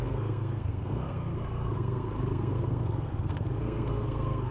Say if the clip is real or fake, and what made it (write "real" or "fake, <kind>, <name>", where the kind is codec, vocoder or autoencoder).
fake, codec, SNAC